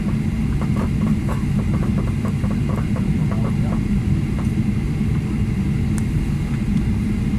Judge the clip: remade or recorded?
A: recorded